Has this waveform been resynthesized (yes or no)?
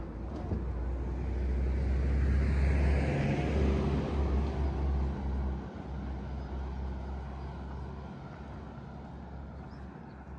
no